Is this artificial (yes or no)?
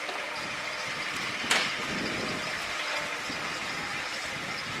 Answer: no